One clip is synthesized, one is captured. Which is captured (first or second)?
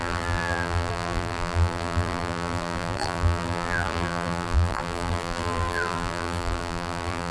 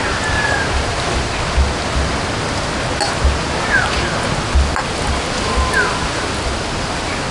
second